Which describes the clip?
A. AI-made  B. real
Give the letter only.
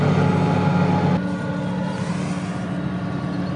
B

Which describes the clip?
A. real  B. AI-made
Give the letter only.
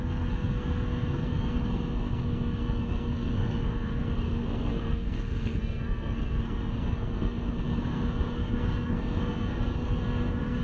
B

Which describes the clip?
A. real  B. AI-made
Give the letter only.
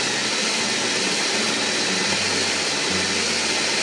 A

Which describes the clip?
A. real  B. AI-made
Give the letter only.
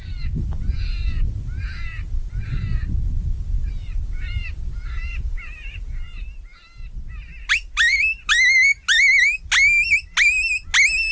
A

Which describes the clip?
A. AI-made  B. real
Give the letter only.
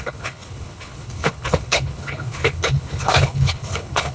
A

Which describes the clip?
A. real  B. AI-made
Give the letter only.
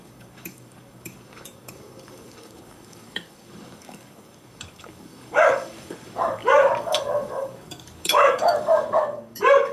B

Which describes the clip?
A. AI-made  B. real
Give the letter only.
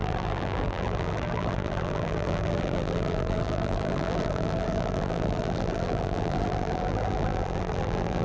A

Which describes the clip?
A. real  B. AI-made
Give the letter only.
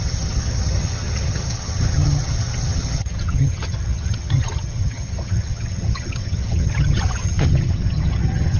B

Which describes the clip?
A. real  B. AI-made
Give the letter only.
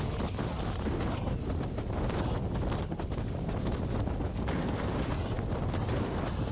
A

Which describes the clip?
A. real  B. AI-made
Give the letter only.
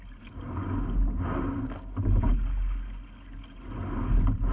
A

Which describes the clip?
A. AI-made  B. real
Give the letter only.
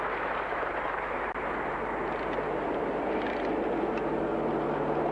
B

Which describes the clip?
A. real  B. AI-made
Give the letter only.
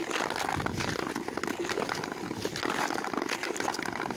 A